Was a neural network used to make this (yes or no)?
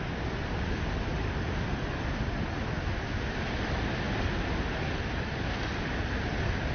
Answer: no